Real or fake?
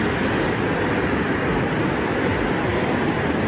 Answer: real